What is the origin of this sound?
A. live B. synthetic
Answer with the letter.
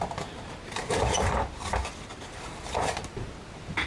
A